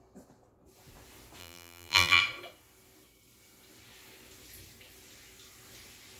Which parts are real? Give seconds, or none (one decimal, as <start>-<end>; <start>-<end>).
0.0-1.4; 2.2-6.2